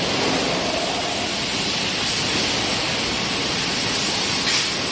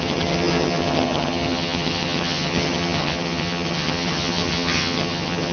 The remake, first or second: second